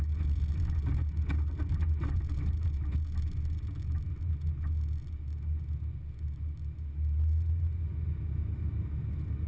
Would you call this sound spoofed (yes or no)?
no